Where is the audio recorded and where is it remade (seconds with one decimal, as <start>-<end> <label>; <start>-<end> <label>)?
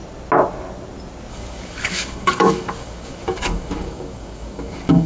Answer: 0.0-1.3 recorded; 1.3-5.1 remade